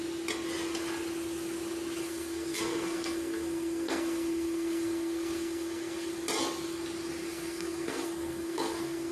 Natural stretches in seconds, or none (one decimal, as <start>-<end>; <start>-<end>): 0.0-2.0; 6.1-7.2